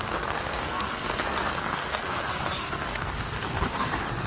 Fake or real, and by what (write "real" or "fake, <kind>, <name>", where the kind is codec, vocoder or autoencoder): fake, codec, SNAC